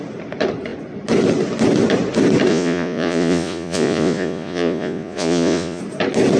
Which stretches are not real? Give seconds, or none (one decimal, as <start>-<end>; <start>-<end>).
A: 2.5-5.8